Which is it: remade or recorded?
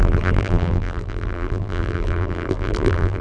remade